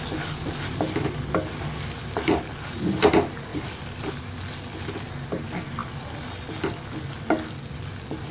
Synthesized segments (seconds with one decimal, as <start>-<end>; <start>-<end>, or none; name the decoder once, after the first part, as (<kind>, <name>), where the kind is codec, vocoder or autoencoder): 3.5-4.1 (vocoder, BigVGAN v2)